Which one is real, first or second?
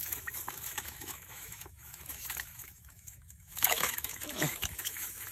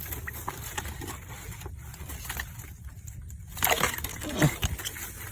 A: second